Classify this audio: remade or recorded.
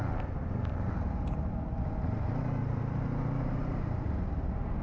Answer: recorded